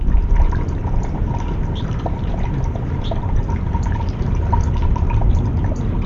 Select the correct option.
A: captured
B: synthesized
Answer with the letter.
B